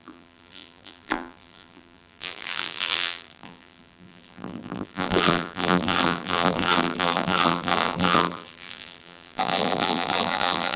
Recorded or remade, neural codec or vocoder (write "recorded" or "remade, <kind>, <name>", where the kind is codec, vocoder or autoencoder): remade, vocoder, BigVGAN v2